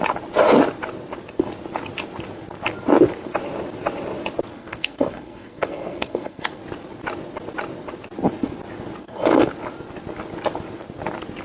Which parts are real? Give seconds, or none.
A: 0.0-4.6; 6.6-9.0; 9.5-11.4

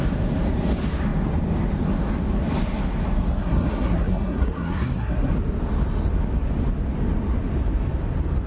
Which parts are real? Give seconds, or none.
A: 0.0-3.3; 5.3-8.5

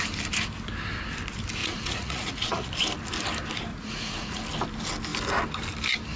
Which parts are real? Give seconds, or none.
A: 0.0-1.6; 2.7-3.7; 4.4-6.2